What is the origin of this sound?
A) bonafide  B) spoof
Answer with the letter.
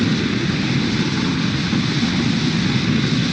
A